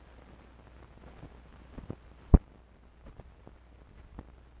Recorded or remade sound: recorded